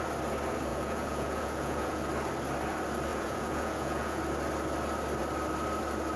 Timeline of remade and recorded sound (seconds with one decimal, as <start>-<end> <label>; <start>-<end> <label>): 0.0-0.7 recorded; 0.7-2.0 remade; 2.0-3.1 recorded; 3.1-4.2 remade; 4.2-6.2 recorded